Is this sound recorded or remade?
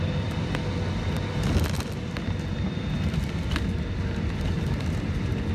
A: recorded